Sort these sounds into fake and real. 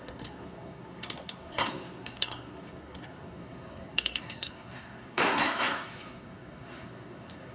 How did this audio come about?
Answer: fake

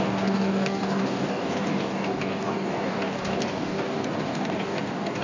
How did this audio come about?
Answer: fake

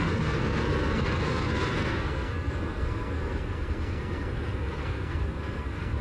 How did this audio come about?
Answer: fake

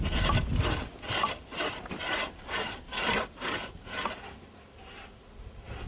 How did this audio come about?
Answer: real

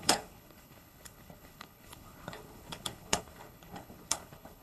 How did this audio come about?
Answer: fake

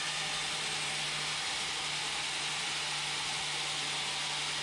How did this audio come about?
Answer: real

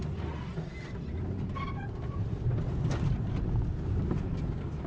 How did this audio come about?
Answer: real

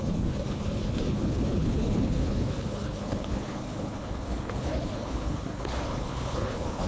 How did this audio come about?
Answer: fake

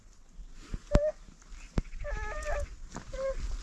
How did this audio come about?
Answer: real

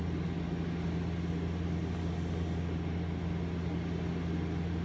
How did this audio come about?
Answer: real